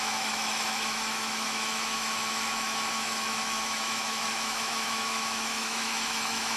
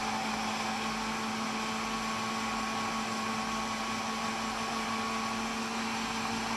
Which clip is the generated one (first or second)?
first